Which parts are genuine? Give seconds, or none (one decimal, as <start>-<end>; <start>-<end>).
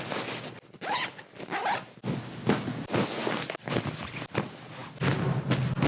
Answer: 0.0-5.9